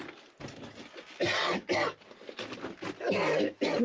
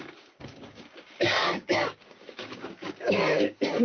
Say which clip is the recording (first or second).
first